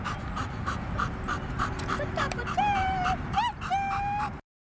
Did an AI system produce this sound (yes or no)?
yes